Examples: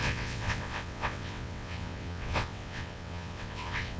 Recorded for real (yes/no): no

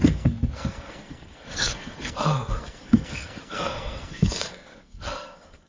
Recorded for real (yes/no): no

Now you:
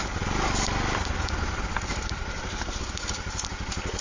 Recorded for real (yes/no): yes